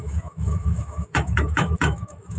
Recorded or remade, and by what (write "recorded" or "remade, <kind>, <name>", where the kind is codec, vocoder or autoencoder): remade, autoencoder, DAC-VAE